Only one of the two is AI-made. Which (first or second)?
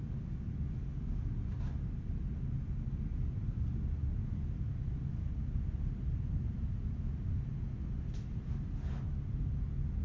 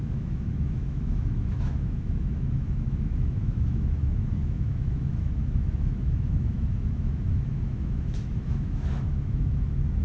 second